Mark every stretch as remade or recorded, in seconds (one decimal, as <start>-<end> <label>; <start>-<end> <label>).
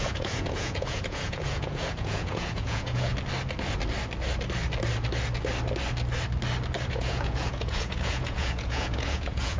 0.0-3.1 remade; 3.1-6.9 recorded; 6.9-9.6 remade